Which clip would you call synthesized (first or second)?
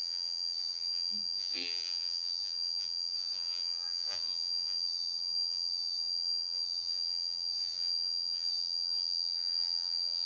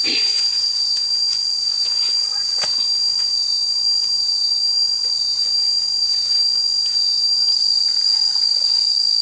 first